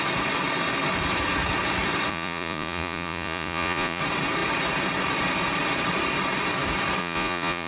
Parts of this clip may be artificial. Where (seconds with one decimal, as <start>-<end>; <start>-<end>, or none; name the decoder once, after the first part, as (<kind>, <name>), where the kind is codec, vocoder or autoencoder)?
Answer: 2.1-4.0 (vocoder, Vocos); 7.0-7.7